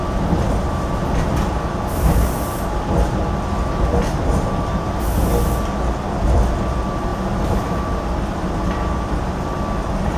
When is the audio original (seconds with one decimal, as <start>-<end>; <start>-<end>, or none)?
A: 0.0-10.2